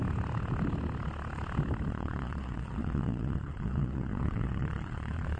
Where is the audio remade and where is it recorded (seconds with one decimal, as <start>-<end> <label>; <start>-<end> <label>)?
0.0-1.9 recorded; 1.9-5.4 remade